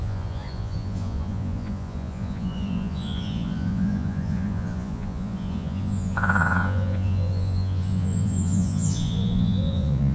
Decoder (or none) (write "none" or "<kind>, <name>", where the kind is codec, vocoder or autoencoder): vocoder, Vocos